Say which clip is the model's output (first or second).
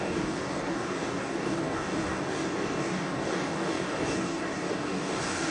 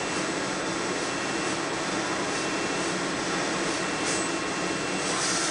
first